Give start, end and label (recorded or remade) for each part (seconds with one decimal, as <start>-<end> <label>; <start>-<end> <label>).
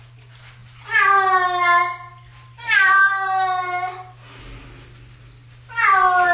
0.0-6.3 recorded